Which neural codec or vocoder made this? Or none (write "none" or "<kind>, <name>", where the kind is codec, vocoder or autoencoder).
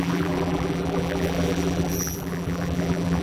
vocoder, BigVGAN v2